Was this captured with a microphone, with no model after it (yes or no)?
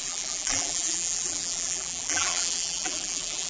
no